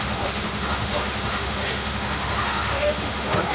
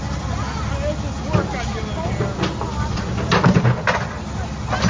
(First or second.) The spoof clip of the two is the first